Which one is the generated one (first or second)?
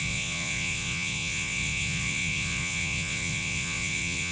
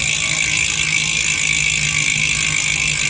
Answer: first